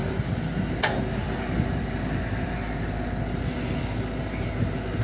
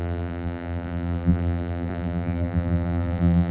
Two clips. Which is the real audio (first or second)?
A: first